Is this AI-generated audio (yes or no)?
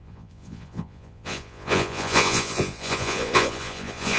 yes